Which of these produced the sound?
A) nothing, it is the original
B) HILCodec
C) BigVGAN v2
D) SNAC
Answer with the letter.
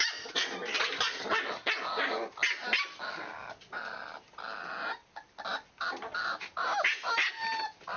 A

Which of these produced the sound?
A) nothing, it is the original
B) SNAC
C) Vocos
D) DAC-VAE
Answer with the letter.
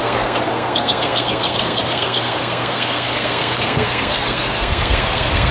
B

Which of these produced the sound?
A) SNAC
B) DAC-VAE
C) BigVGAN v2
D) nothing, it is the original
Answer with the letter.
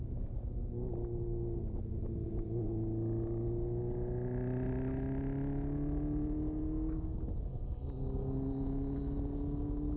D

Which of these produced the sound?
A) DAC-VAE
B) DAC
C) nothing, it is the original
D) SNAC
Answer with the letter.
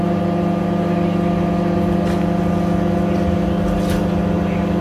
C